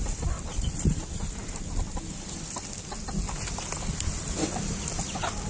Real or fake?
real